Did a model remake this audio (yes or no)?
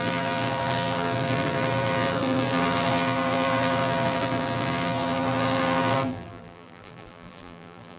yes